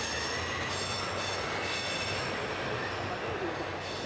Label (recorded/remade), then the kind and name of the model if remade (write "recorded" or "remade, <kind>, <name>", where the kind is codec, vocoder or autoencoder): recorded